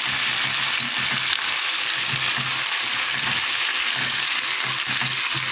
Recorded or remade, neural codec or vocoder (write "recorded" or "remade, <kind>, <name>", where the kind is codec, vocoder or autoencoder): recorded